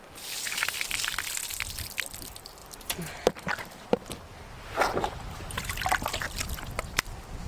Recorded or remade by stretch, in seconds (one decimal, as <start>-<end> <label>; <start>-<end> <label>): 0.0-7.5 recorded